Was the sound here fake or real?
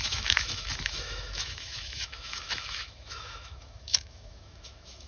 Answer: fake